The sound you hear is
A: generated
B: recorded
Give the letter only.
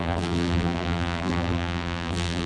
A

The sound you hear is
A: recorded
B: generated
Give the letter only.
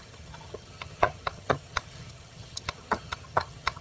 B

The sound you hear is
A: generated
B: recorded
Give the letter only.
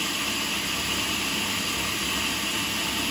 B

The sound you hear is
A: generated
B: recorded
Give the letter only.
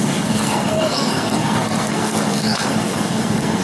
A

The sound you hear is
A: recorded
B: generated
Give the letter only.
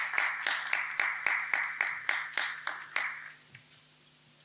A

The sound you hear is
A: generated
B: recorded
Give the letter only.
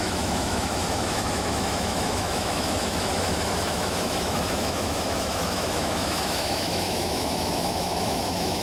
A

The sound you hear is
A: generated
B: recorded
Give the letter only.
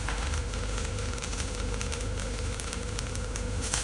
A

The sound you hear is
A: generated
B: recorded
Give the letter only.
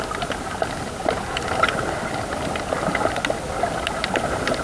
B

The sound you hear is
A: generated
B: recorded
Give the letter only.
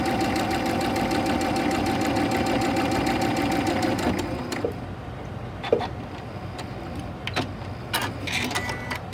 B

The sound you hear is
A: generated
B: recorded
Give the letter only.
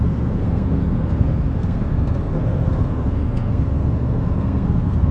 A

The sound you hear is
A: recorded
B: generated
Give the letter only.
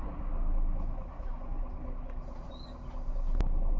A